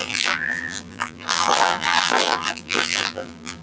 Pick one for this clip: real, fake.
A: fake